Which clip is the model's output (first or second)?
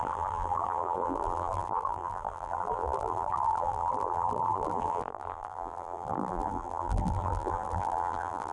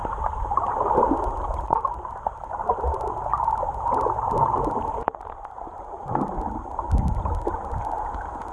first